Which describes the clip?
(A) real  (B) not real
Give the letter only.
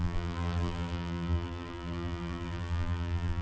B